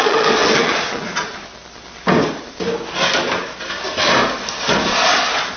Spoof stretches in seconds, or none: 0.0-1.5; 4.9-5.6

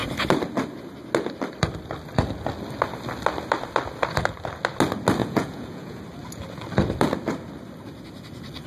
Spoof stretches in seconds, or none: 5.2-6.0